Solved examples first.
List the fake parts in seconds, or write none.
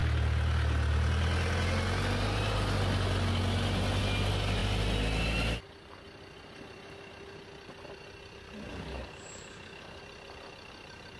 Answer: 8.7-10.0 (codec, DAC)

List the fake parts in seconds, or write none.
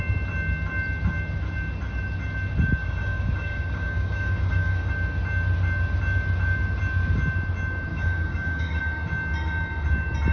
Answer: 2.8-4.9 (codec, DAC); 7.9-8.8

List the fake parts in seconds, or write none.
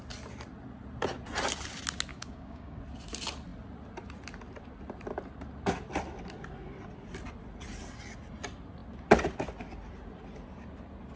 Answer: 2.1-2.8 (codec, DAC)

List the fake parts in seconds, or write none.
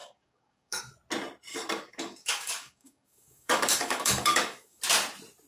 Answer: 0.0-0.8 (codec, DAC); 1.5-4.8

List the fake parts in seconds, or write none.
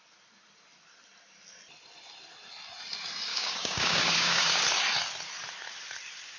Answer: 3.3-4.6 (codec, DAC)